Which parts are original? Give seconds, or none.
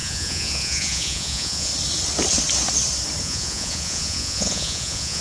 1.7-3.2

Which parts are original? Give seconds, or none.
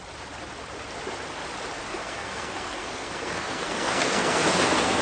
0.0-1.9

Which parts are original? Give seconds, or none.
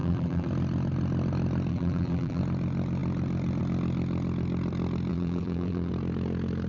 0.5-1.7; 2.4-5.1; 5.9-6.7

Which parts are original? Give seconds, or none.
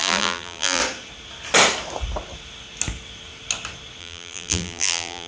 0.8-4.0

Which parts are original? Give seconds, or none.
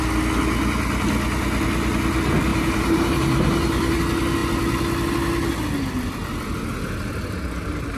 0.0-2.5; 4.0-8.0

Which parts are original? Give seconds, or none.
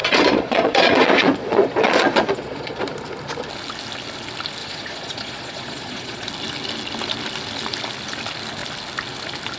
2.8-4.6; 6.3-9.6